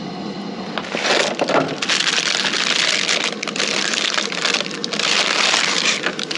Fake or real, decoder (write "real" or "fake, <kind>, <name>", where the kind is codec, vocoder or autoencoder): real